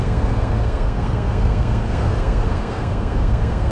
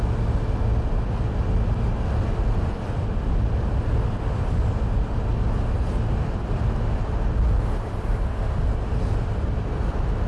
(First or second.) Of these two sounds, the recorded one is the second